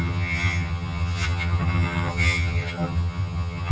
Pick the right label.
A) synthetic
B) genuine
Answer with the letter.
A